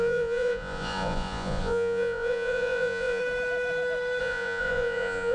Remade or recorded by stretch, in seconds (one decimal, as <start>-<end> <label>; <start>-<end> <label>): 0.0-3.2 remade; 3.2-4.2 recorded; 4.2-5.3 remade